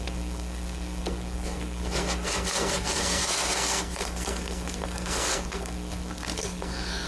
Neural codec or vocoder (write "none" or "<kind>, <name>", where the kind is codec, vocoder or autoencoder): codec, SNAC